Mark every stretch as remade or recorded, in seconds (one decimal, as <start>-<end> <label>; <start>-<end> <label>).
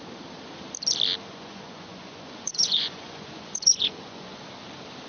0.0-1.3 recorded; 1.3-4.4 remade; 4.4-5.1 recorded